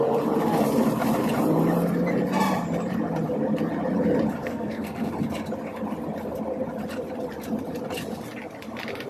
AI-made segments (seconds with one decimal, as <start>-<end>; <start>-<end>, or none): 4.4-5.1